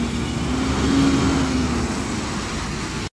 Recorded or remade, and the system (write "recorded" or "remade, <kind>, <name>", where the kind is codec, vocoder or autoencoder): recorded